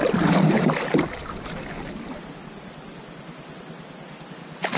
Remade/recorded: recorded